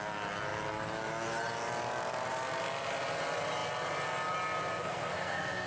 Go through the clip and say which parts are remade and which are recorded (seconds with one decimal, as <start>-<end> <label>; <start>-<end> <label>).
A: 0.0-4.8 recorded; 4.8-5.7 remade